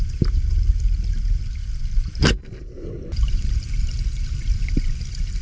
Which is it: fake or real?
real